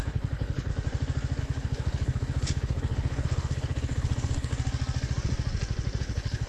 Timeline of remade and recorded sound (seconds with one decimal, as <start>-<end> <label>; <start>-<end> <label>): 0.0-0.7 remade; 0.7-1.4 recorded; 1.4-4.5 remade; 4.5-6.0 recorded; 6.0-6.5 remade